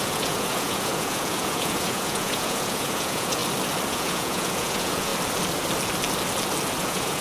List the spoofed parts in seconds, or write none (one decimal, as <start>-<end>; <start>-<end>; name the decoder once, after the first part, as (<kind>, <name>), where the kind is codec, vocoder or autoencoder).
0.0-3.4 (vocoder, Vocos); 3.9-5.1; 6.8-7.2